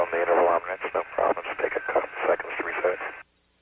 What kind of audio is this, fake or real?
real